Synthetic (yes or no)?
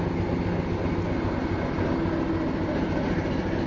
no